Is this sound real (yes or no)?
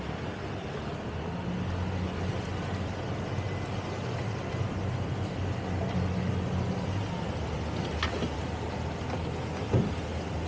yes